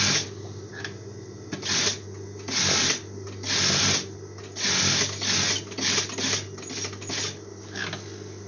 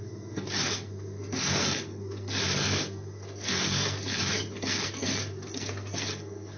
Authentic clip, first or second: first